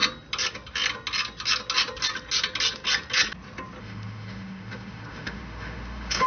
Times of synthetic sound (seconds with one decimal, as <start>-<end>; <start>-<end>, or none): 3.8-6.3